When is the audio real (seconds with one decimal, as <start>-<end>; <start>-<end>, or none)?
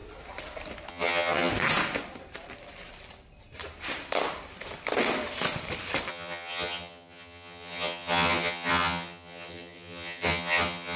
0.0-0.9; 1.5-6.1